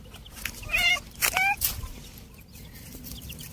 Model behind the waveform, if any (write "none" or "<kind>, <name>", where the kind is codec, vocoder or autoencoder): none